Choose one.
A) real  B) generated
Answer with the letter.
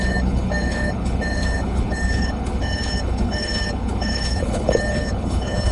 B